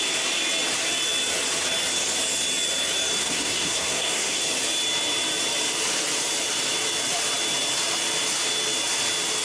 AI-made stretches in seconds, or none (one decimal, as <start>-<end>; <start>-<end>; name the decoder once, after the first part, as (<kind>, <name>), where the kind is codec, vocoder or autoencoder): 3.2-4.4 (codec, SNAC)